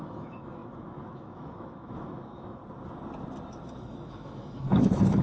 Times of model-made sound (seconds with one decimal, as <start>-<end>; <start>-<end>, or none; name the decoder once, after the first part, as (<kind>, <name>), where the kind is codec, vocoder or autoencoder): 0.0-2.6 (autoencoder, DAC-VAE); 3.6-5.2